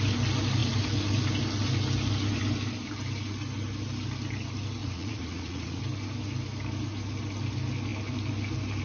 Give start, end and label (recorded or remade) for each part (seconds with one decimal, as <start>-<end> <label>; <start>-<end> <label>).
0.0-4.8 recorded; 4.8-5.8 remade; 5.8-8.8 recorded